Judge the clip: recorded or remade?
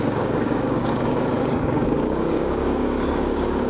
remade